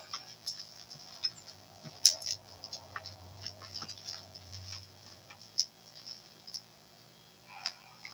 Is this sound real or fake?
fake